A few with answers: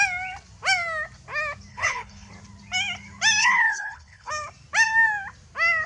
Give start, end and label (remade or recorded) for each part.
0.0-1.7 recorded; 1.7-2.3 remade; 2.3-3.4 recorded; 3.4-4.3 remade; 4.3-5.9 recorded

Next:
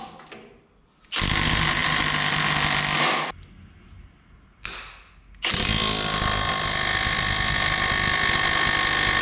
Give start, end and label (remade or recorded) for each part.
0.0-9.2 recorded

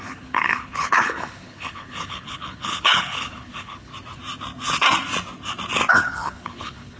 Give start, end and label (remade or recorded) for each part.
0.0-3.9 remade; 3.9-5.9 recorded; 5.9-7.0 remade

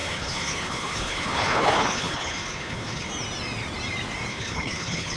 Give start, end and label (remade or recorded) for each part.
0.0-3.1 remade; 3.1-4.3 recorded; 4.3-5.2 remade

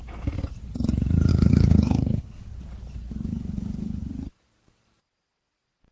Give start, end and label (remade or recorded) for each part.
0.0-1.3 recorded; 1.3-2.6 remade; 2.6-3.3 recorded; 3.3-4.1 remade; 4.1-5.9 recorded

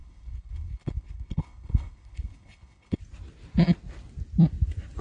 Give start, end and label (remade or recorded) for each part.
0.0-3.0 remade; 3.0-5.0 recorded